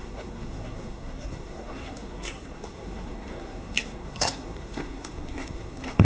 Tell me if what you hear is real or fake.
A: fake